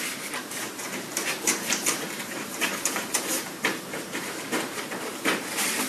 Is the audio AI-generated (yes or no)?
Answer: yes